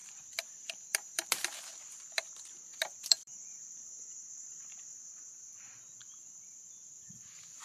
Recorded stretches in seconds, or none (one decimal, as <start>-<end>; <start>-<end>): 2.1-2.6; 3.9-4.5